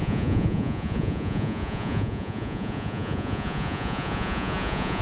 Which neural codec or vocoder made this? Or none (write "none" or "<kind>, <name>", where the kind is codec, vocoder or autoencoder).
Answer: vocoder, Vocos